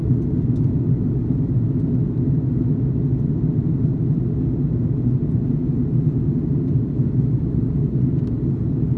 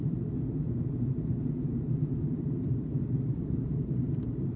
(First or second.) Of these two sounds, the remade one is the second